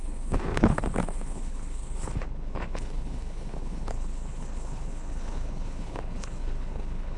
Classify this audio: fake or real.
fake